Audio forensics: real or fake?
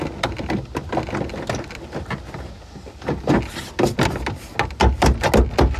real